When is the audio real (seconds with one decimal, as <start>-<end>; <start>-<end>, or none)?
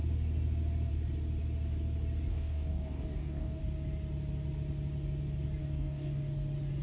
0.0-2.3; 3.6-5.6; 6.2-6.8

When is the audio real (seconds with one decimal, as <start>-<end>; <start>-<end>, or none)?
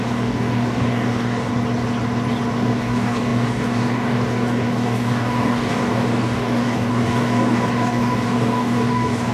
1.5-2.5